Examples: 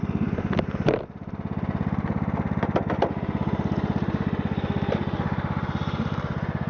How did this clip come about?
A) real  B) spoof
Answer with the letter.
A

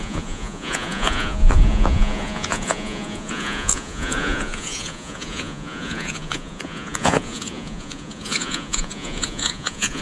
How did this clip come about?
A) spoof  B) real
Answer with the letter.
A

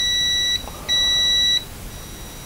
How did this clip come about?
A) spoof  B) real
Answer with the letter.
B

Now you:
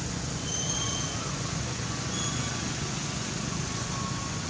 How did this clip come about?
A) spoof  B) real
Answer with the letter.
A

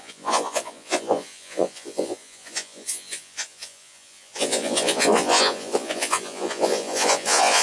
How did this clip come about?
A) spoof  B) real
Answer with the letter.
A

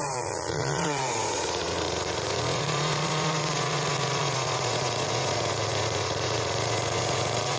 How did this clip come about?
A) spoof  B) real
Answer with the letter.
A